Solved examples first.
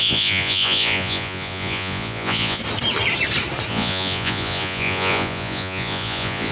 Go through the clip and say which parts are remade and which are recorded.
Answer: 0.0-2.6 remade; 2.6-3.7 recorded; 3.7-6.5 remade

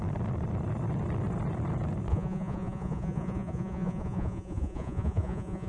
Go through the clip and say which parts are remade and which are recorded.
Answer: 0.0-2.1 recorded; 2.1-5.7 remade

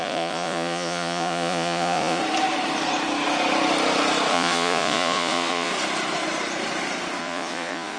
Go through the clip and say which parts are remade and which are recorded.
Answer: 0.0-2.2 remade; 2.2-4.3 recorded; 4.3-5.7 remade; 5.7-7.2 recorded; 7.2-8.0 remade

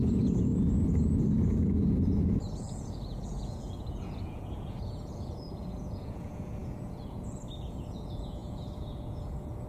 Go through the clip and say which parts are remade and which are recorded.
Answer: 0.0-0.5 remade; 0.5-1.2 recorded; 1.2-9.7 remade